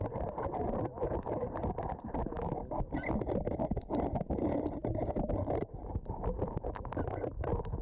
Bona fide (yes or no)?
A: no